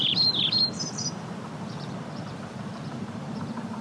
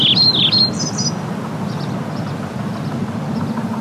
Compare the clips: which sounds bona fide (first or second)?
second